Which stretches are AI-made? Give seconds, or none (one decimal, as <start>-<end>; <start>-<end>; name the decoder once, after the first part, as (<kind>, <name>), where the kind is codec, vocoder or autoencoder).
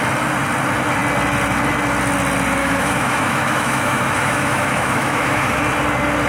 2.6-5.6 (autoencoder, DAC-VAE)